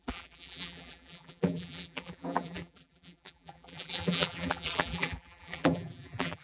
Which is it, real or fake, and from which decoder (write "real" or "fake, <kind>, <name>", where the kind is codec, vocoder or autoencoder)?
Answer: fake, vocoder, BigVGAN v2